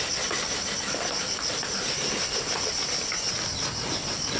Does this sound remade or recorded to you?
recorded